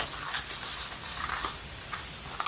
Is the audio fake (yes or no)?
no